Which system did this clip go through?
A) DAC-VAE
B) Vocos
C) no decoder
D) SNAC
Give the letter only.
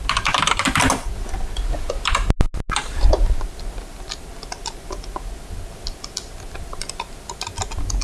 C